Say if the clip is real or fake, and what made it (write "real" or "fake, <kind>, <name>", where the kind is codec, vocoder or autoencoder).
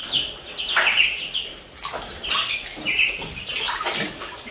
real